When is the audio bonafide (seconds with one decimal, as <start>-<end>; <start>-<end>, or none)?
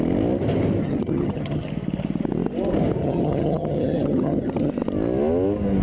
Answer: 0.0-0.8; 1.7-3.0; 4.7-5.8